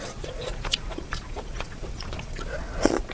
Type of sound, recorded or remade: remade